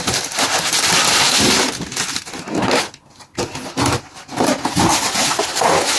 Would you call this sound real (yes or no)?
yes